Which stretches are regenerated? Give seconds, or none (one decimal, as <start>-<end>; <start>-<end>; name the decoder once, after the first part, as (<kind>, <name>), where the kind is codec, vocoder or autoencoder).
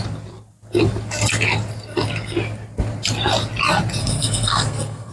4.0-5.1 (codec, SNAC)